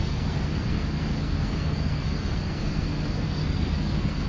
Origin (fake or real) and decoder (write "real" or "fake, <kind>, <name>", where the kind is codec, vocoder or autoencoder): fake, codec, SNAC